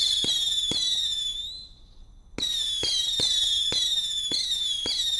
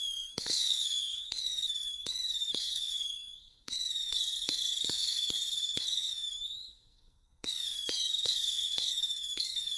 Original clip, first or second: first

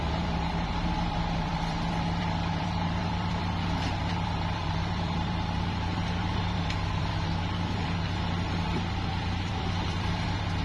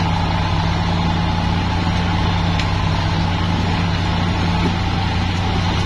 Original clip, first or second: second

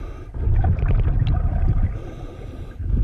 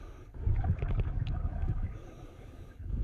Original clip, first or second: first